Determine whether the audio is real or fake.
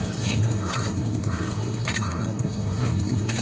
fake